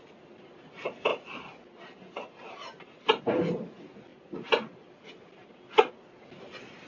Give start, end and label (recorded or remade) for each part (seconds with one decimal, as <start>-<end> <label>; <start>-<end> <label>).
0.0-6.9 recorded